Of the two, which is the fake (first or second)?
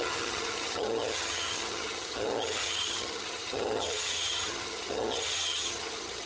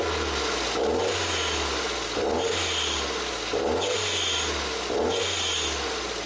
first